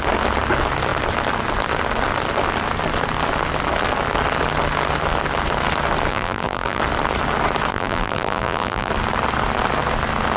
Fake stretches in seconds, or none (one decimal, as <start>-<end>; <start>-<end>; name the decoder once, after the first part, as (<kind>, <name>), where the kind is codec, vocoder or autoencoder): 6.1-6.8 (vocoder, BigVGAN v2); 7.7-8.9